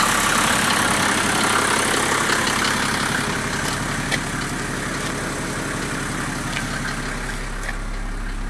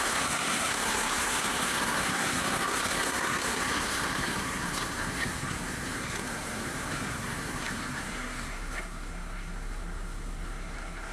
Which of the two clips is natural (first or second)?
first